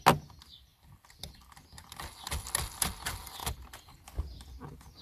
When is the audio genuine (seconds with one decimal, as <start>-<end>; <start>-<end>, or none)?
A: 0.0-0.7; 1.8-3.4; 4.2-5.0

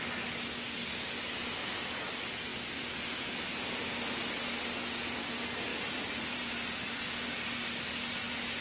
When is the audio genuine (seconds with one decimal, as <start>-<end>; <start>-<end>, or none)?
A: 0.0-3.5; 4.1-5.7; 6.5-8.6